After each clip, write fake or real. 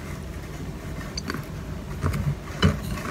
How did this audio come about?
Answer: real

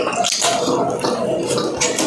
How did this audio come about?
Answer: real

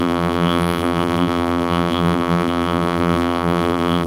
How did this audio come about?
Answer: fake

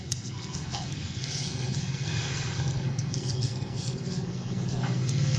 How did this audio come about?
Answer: fake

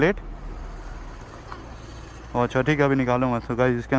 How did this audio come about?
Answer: real